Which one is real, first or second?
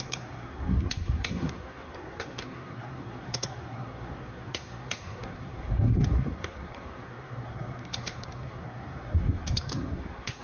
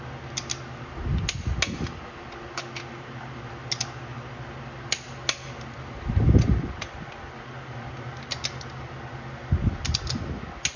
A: second